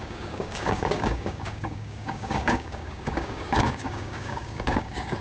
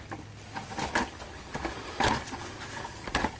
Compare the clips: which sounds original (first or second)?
second